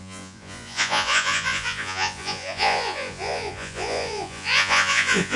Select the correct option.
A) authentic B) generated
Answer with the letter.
B